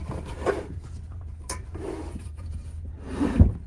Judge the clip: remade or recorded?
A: remade